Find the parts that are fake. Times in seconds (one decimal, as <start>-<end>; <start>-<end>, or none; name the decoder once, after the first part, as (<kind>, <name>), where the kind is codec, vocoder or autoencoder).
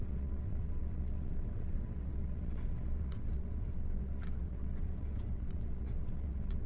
0.0-6.7 (vocoder, WaveNeXt)